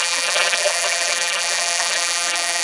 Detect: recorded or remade remade